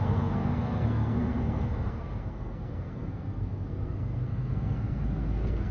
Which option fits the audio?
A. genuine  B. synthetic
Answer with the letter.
B